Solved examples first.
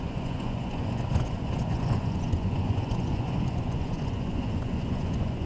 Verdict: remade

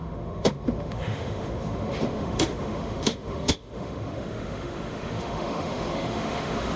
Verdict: remade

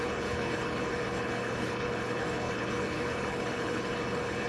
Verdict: remade